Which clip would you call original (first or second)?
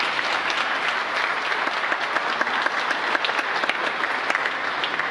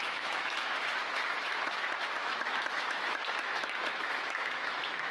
first